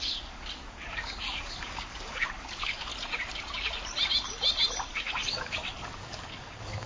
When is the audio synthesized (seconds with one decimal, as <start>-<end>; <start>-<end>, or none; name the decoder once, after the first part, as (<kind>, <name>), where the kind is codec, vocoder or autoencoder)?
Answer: 0.0-2.9 (codec, DAC); 4.9-6.9